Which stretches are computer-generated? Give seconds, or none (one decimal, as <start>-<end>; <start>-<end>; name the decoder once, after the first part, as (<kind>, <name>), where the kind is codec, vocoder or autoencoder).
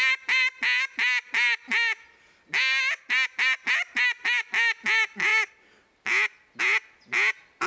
none